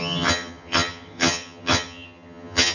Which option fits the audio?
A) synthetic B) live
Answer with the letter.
A